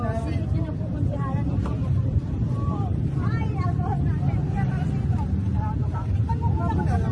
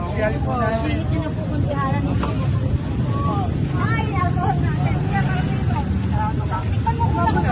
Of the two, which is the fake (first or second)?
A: first